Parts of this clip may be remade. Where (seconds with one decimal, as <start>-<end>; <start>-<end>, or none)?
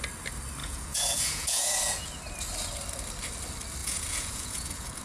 0.6-2.2; 3.8-5.0